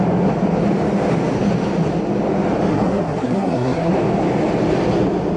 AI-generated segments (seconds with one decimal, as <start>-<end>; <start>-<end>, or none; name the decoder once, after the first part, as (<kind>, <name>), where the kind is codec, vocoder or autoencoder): 2.7-3.9 (codec, SNAC)